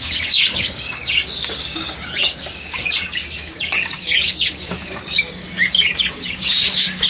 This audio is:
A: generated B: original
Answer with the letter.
A